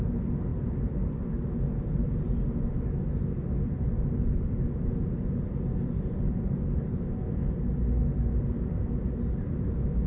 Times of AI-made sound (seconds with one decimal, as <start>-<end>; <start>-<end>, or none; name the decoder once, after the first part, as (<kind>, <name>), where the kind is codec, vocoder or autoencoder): none